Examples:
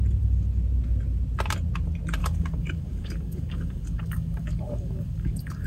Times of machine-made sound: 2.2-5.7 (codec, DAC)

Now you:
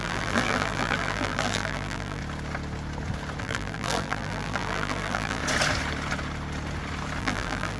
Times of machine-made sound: 0.0-2.2 (vocoder, BigVGAN v2); 3.4-5.4; 7.2-7.8

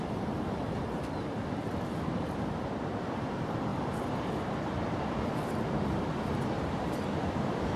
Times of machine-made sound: 0.0-3.7 (vocoder, BigVGAN v2); 4.3-7.8

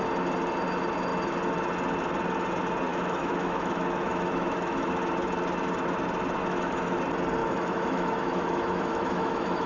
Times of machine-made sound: 2.9-4.9 (autoencoder, DAC-VAE); 6.4-7.0; 7.4-9.7

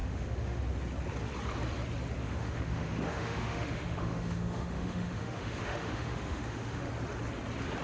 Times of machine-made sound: 0.0-0.6 (autoencoder, DAC-VAE); 2.2-6.9

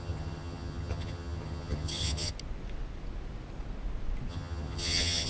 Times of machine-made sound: 0.0-2.3 (vocoder, HiFi-GAN); 4.3-5.3

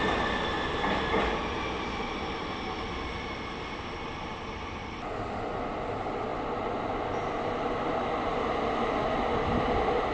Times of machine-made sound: none

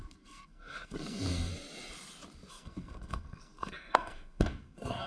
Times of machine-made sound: 0.0-1.5 (codec, SNAC); 2.5-5.1